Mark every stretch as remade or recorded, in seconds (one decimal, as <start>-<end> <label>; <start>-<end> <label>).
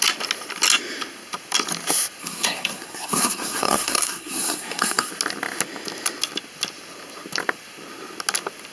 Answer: 0.0-2.2 recorded; 2.2-5.1 remade; 5.1-8.7 recorded